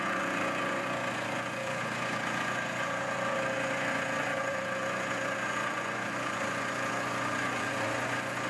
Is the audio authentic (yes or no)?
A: no